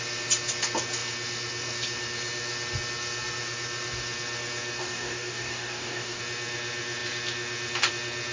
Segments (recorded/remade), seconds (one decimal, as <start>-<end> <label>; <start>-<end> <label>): 0.0-4.8 recorded; 4.8-6.2 remade; 6.2-8.3 recorded